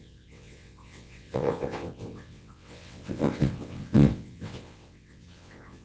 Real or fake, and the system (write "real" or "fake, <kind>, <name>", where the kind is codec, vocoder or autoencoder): fake, vocoder, WaveNeXt